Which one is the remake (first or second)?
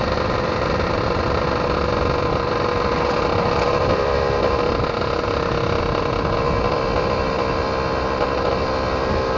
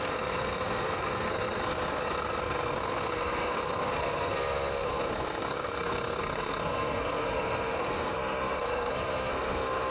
second